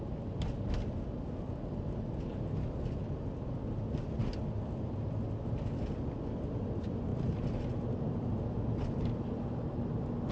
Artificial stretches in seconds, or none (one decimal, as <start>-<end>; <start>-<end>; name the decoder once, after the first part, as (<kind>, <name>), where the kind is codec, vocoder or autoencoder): none